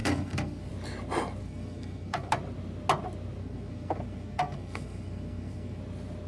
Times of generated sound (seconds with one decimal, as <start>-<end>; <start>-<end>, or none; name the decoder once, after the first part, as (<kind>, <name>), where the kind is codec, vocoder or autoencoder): 0.0-0.7 (codec, SNAC); 1.4-2.3; 3.4-5.8